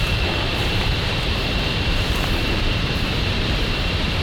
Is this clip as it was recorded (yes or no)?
no